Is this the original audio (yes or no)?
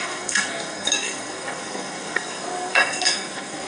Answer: no